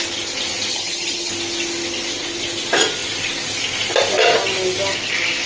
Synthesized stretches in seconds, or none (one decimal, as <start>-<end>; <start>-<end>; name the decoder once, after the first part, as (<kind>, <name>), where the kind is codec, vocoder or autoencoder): 0.7-1.3 (vocoder, HiFi-GAN)